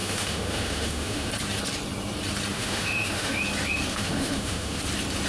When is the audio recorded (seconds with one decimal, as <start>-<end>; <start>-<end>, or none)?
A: 1.3-2.5; 3.4-3.9; 4.8-5.3